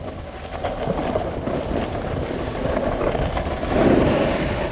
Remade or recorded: recorded